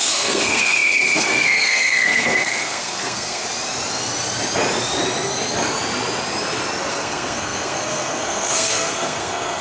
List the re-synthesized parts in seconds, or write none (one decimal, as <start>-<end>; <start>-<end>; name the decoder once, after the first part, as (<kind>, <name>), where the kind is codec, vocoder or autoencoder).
0.0-3.4 (codec, SNAC); 6.9-9.6